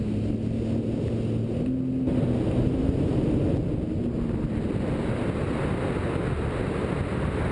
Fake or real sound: real